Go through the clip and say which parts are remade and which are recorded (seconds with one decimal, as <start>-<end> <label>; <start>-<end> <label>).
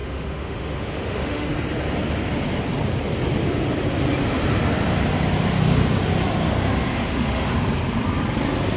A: 0.0-1.5 remade; 1.5-6.9 recorded; 6.9-7.5 remade; 7.5-8.8 recorded